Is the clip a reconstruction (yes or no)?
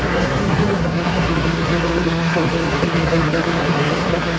yes